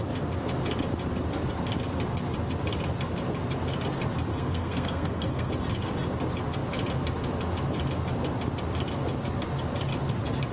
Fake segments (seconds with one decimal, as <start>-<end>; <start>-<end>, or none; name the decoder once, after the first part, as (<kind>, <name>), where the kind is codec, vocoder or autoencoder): 4.3-5.5 (codec, SNAC)